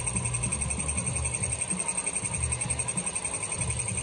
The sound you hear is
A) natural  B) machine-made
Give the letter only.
A